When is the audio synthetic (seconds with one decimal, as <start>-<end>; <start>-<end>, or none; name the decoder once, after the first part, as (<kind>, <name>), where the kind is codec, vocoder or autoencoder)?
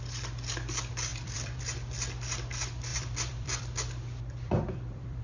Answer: 1.1-1.6 (vocoder, BigVGAN v2); 2.9-5.2